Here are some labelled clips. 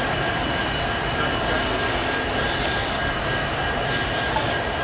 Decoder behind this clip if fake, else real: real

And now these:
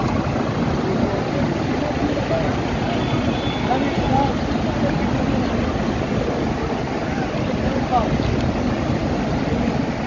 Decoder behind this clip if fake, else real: real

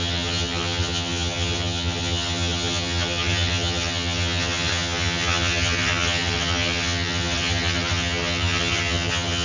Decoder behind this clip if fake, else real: fake, vocoder, HiFi-GAN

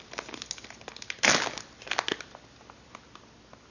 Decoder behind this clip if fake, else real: real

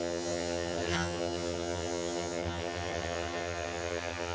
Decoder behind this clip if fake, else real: fake, vocoder, HiFi-GAN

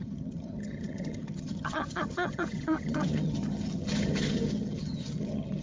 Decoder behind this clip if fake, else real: fake, vocoder, HiFi-GAN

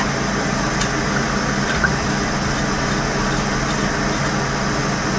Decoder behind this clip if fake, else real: real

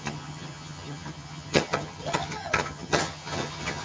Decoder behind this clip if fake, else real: fake, vocoder, HiFi-GAN